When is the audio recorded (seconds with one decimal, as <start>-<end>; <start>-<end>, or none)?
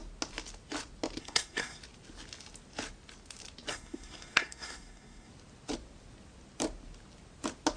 0.0-1.2; 1.8-3.7; 5.3-7.8